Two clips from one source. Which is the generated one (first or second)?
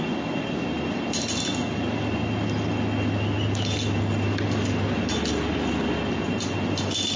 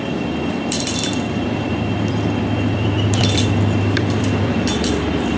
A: second